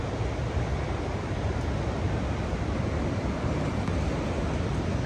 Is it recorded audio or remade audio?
recorded